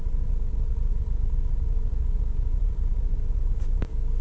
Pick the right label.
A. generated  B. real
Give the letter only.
B